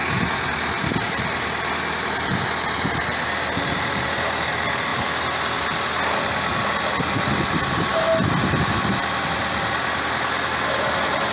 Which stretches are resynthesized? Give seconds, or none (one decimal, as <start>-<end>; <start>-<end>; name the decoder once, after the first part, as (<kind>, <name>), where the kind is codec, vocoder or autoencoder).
none